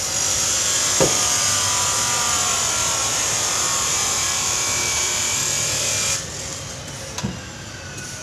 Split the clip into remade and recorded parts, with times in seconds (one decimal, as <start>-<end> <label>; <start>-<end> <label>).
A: 0.0-3.0 recorded; 3.0-5.4 remade; 5.4-8.2 recorded